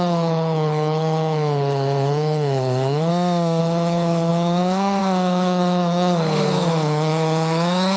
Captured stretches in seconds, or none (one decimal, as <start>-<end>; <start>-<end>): 3.1-3.6